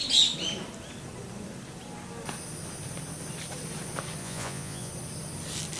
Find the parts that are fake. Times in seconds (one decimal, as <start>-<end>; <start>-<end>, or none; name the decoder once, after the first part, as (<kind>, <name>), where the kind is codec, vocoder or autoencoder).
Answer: 4.2-4.9 (vocoder, Vocos)